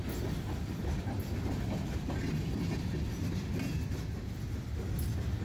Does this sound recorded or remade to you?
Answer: recorded